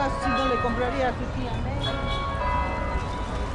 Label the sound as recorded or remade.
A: recorded